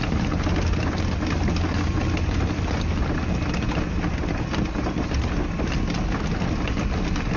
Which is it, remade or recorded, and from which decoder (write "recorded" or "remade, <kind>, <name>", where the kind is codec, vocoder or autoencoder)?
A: recorded